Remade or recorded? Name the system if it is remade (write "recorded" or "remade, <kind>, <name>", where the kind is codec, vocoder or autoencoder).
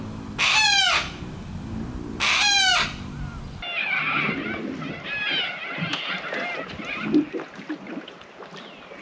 recorded